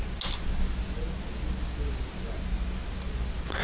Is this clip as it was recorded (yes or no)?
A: yes